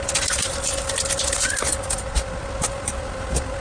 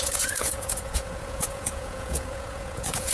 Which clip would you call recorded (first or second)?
first